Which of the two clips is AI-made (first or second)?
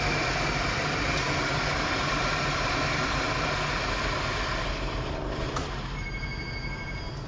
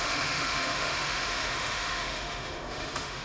second